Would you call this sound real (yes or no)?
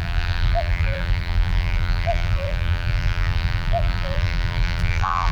no